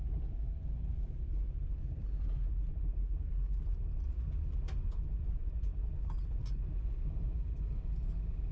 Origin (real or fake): real